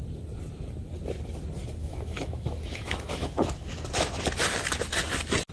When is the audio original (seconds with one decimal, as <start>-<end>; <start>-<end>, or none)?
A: 0.0-1.8; 4.2-5.5